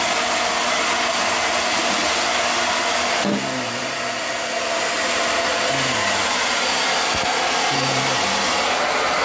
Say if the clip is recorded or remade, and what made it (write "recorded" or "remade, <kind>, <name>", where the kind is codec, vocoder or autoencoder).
recorded